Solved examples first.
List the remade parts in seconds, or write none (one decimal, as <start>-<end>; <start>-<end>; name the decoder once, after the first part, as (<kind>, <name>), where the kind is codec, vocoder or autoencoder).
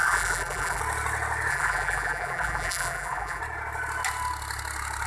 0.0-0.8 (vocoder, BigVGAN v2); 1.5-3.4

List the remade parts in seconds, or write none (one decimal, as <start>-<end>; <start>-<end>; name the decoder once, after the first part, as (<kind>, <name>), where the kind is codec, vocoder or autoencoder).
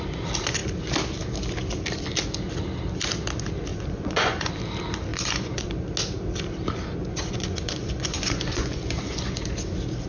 3.7-4.5 (vocoder, Vocos); 5.1-5.7; 7.0-9.4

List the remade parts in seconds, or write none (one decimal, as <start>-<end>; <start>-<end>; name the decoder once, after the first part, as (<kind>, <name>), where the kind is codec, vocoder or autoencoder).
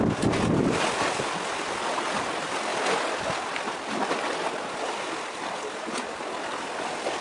none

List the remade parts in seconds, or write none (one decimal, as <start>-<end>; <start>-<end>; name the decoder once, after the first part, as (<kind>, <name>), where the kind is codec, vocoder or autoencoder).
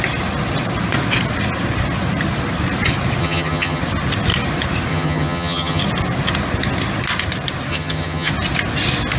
3.2-3.8 (vocoder, HiFi-GAN); 4.9-5.8; 7.7-8.3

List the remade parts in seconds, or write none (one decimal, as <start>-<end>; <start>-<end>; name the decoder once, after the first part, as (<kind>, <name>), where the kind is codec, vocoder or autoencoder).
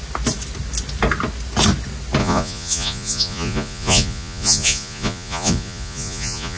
2.2-6.6 (vocoder, Vocos)